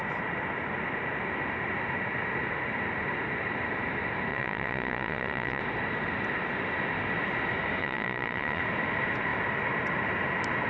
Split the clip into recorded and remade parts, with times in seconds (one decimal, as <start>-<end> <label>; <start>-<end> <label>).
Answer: 0.0-4.3 recorded; 4.3-5.6 remade; 5.6-7.8 recorded; 7.8-8.6 remade; 8.6-10.7 recorded